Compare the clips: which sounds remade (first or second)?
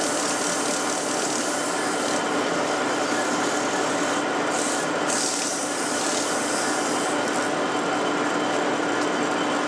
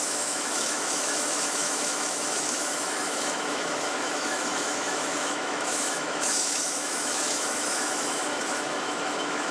second